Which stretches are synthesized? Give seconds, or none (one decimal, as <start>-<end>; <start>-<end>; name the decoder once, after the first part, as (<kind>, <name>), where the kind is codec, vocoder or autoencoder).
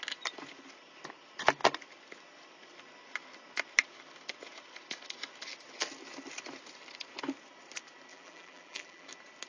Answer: 8.1-9.1 (vocoder, BigVGAN v2)